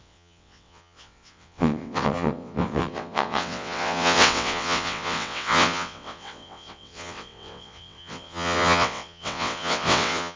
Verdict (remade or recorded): remade